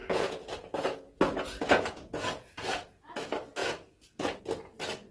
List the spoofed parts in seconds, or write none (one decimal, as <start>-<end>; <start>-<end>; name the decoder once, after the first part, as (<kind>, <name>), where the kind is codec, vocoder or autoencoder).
0.0-3.1 (vocoder, Vocos); 3.6-4.4